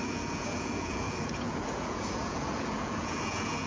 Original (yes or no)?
no